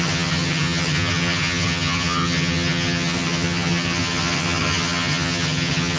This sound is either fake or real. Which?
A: fake